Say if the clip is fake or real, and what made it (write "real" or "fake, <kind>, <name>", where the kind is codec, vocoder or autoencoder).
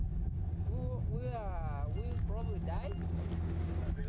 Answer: real